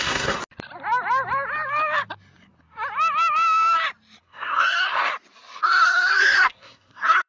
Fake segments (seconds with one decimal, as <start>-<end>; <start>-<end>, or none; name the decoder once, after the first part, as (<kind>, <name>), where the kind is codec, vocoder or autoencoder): 0.0-0.4 (codec, SNAC); 4.2-5.1; 5.6-7.3